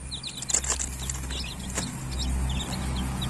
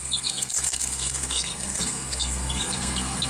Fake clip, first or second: second